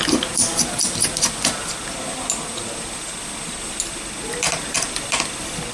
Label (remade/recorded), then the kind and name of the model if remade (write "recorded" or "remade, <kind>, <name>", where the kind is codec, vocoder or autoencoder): recorded